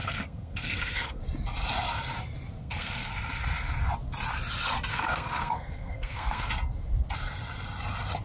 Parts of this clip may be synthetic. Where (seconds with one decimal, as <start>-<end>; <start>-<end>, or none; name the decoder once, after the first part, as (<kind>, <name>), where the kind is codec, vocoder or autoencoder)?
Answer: 0.0-1.2 (codec, SNAC); 2.6-3.1; 4.9-6.5